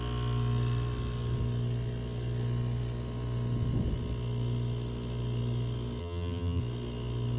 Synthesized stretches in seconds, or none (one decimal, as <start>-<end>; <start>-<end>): 6.0-6.6